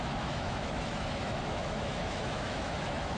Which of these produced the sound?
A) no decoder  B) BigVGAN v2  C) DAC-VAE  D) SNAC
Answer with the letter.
C